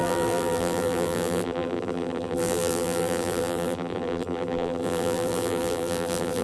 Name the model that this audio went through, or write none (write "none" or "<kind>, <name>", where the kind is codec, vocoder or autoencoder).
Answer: vocoder, BigVGAN v2